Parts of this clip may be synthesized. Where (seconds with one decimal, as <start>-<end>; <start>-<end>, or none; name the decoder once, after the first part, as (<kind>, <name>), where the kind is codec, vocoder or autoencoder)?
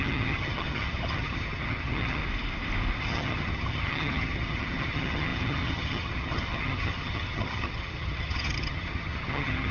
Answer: 0.0-2.2 (vocoder, HiFi-GAN); 3.0-9.7